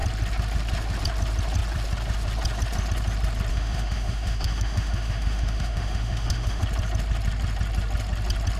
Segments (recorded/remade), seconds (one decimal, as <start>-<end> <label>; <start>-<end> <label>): 0.0-3.5 recorded; 3.5-6.6 remade; 6.6-8.6 recorded